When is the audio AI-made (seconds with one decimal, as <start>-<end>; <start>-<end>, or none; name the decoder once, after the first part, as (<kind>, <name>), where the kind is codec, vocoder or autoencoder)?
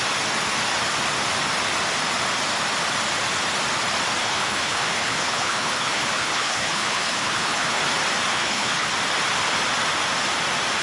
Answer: 4.2-7.8 (codec, HILCodec); 8.3-8.9